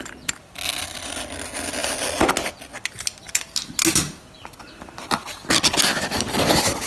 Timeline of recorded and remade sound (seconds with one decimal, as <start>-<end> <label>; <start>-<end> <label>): 0.0-6.9 recorded